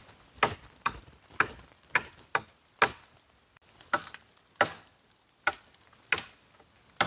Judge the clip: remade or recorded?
recorded